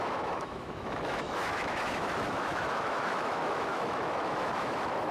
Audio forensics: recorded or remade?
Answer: remade